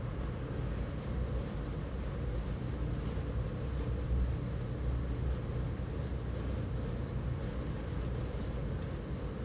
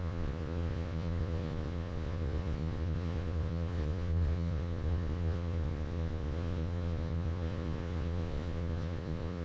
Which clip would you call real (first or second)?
first